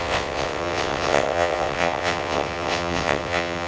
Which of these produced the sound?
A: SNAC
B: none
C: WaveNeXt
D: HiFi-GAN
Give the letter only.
C